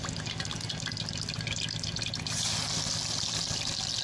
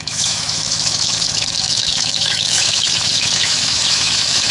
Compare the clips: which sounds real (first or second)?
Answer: first